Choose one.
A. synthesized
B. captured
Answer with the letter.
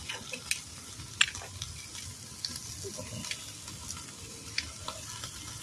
B